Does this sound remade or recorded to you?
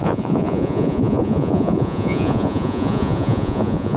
remade